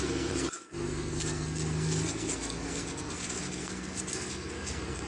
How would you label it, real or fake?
fake